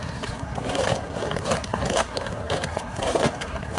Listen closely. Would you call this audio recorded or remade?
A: remade